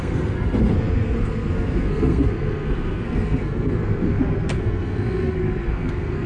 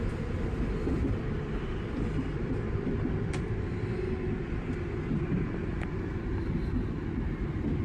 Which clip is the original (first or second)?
second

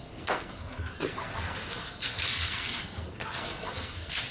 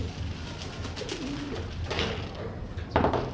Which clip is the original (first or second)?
second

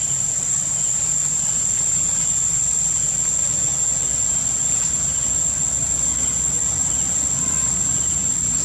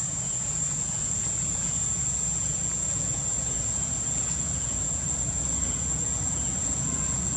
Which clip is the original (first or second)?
first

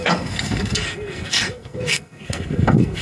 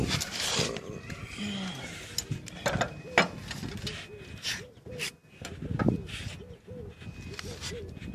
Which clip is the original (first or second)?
second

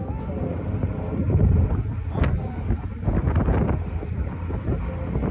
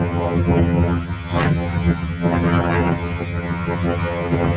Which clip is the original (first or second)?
first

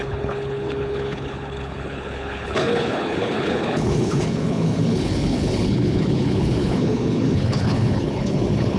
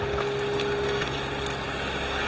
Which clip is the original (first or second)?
second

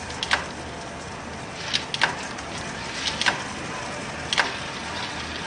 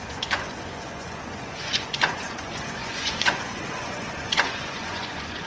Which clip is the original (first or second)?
first